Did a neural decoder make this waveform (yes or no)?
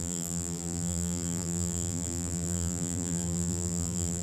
yes